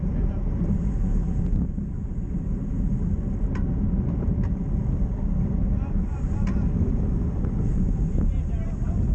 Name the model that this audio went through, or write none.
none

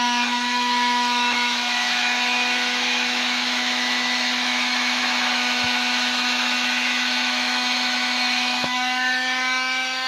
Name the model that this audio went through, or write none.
autoencoder, DAC-VAE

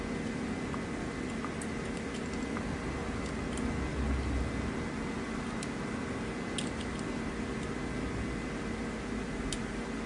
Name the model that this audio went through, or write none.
none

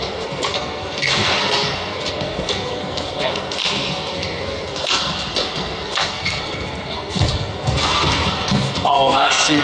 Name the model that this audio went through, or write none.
codec, SNAC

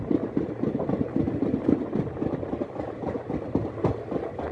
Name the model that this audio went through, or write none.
none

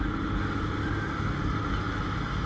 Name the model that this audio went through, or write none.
none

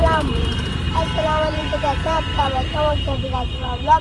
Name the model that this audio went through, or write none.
vocoder, BigVGAN v2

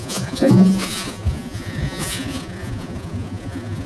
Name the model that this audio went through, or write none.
vocoder, Vocos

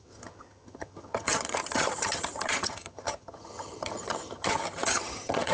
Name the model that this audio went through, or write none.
vocoder, HiFi-GAN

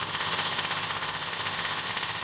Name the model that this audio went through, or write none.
codec, ZipCodec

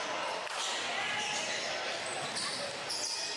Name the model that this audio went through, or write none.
none